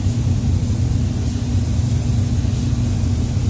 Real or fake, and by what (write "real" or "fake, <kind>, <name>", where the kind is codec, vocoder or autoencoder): real